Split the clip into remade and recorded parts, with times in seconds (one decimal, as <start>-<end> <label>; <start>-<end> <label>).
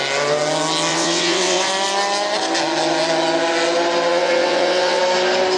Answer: 0.0-0.9 recorded; 0.9-1.7 remade; 1.7-4.1 recorded; 4.1-5.0 remade; 5.0-5.6 recorded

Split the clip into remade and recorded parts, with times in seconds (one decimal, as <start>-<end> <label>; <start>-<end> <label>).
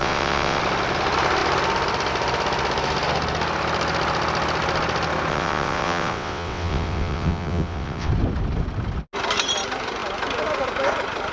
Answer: 0.0-0.6 remade; 0.6-5.3 recorded; 5.3-8.1 remade; 8.1-11.3 recorded